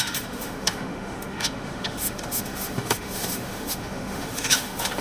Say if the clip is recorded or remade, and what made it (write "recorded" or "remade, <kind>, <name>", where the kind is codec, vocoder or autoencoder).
remade, autoencoder, DAC-VAE